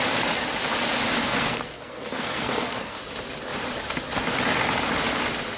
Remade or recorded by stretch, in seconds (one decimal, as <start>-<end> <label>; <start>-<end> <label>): 0.0-1.2 recorded; 1.2-3.0 remade; 3.0-5.6 recorded